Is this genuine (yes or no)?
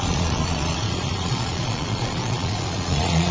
no